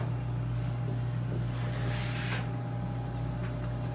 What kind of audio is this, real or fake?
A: real